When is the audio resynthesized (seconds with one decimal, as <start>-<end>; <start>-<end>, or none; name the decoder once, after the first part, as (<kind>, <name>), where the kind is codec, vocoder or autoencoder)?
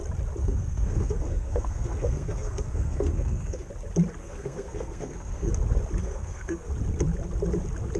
0.4-3.7 (codec, SNAC); 4.2-5.5; 6.0-6.7